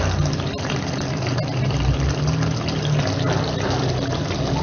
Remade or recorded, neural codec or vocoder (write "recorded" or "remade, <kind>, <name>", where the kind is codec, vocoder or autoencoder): recorded